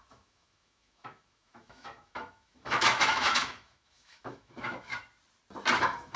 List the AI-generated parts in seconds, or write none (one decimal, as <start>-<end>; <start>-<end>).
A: 0.0-4.9; 5.8-6.2